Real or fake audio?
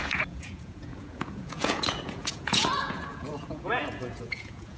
fake